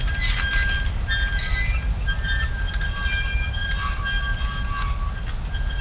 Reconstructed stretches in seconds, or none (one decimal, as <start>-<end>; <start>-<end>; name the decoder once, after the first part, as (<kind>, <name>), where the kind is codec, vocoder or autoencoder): none